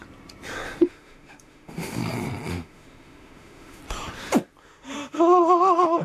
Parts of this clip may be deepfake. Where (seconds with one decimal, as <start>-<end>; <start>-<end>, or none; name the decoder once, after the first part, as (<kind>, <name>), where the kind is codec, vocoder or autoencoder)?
0.9-2.0 (autoencoder, DAC-VAE); 2.5-3.8; 4.6-6.0